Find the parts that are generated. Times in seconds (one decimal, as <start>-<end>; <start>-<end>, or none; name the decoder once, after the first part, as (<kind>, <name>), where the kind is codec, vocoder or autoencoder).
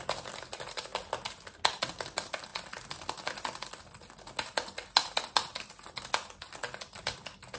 none